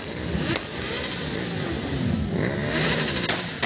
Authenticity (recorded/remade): recorded